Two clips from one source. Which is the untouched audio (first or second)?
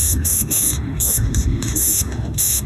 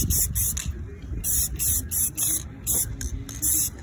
second